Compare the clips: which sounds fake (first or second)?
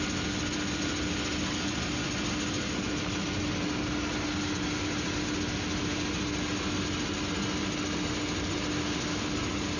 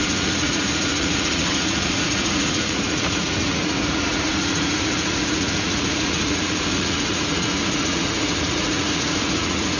second